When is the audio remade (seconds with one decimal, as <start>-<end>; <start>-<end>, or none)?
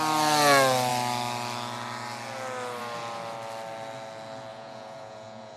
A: 4.5-5.6